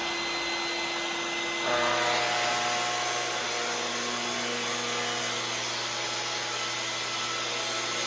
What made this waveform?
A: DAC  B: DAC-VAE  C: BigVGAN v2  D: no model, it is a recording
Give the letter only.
D